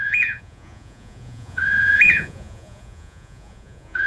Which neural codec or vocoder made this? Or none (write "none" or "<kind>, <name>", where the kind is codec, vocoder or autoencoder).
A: vocoder, Vocos